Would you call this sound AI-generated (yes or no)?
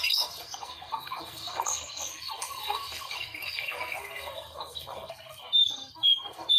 yes